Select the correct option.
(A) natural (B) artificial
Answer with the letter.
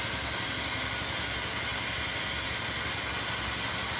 A